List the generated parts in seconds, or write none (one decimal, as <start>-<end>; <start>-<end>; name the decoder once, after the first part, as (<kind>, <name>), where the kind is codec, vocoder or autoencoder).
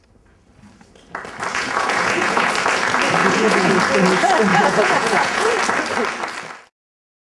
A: 1.5-2.5 (vocoder, Vocos); 3.2-3.7; 4.5-5.5